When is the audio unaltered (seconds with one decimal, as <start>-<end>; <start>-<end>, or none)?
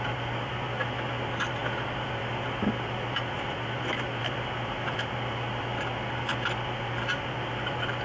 0.0-8.0